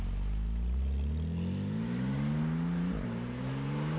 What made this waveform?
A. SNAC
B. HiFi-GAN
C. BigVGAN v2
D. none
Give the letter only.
D